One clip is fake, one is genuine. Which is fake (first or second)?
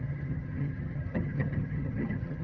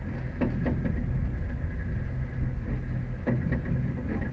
first